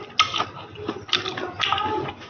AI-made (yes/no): no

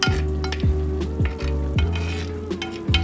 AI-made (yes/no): no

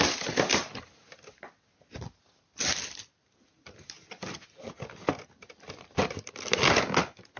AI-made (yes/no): no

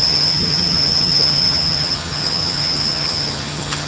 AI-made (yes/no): yes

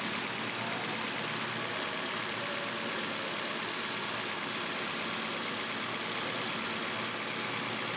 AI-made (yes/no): no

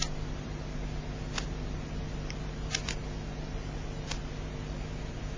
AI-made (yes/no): no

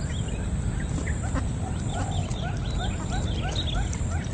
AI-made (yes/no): no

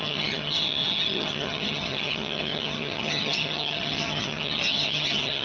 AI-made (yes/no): yes